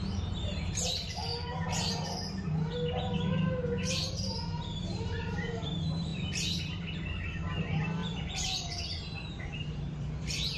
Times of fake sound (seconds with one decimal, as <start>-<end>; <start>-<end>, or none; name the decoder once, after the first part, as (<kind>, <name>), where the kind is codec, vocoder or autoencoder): 0.0-1.3 (vocoder, BigVGAN v2); 4.1-10.6